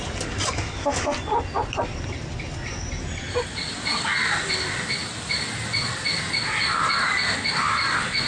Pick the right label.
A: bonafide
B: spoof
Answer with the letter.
A